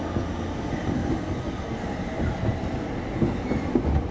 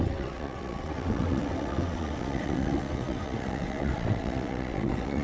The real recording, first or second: first